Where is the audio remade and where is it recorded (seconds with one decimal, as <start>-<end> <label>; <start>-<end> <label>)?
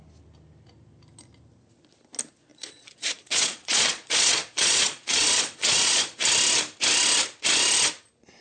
0.0-2.5 recorded; 2.5-6.2 remade; 6.2-8.4 recorded